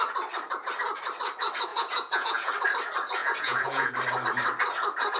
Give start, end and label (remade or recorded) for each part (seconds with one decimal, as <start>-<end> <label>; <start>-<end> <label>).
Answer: 0.0-1.7 recorded; 1.7-2.5 remade; 2.5-3.2 recorded; 3.2-3.9 remade; 3.9-5.2 recorded